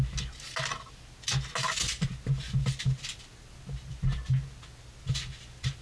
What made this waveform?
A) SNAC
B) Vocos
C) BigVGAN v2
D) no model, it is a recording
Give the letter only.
D